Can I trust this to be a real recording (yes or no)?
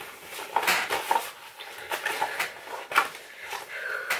yes